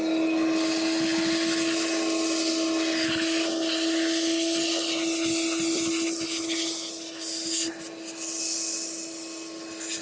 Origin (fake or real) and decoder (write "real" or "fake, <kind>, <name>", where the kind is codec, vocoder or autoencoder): real